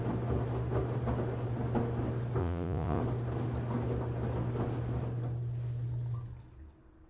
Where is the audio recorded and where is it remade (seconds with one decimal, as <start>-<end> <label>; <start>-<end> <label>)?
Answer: 0.0-2.4 recorded; 2.4-3.0 remade; 3.0-7.1 recorded